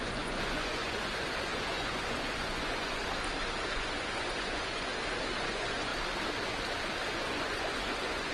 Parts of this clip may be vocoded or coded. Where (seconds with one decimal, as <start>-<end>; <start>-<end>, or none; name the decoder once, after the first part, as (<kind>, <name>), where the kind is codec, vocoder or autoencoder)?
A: 0.0-3.0 (vocoder, Vocos); 3.7-4.9; 5.4-5.9; 7.1-8.3